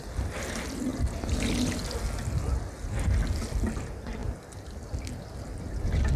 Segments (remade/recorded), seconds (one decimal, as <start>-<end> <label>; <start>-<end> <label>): 0.0-6.2 recorded